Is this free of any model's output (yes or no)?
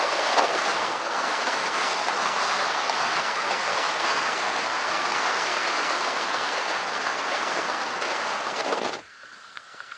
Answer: no